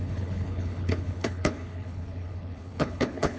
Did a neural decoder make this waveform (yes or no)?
yes